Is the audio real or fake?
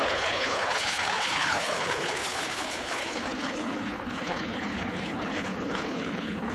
fake